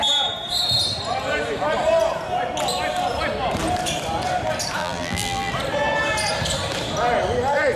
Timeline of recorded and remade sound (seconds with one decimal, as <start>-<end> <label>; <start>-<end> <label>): 0.0-4.8 recorded; 4.8-5.5 remade; 5.5-7.8 recorded